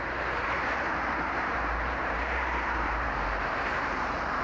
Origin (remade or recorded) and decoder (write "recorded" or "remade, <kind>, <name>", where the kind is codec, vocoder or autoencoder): remade, vocoder, BigVGAN v2